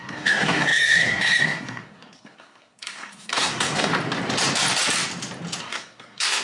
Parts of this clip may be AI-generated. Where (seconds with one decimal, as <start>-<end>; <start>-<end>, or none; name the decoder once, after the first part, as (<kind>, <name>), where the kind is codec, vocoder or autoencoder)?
0.0-3.9 (codec, SNAC); 5.6-6.4